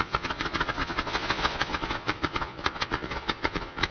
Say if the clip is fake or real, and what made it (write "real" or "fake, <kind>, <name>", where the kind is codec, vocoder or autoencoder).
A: fake, vocoder, Vocos